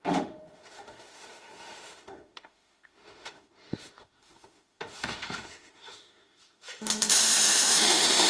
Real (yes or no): no